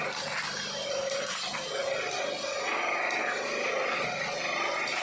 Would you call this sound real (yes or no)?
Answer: yes